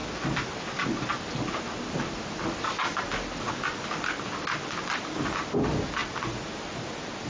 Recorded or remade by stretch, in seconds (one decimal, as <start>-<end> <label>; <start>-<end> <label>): 0.0-7.3 recorded